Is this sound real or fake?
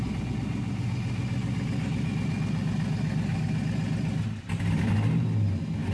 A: real